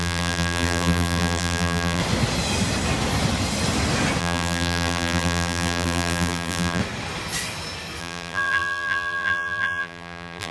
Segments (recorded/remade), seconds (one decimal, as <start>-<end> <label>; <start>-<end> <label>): 0.0-2.0 remade; 2.0-4.2 recorded; 4.2-6.8 remade; 6.8-8.0 recorded; 8.0-10.5 remade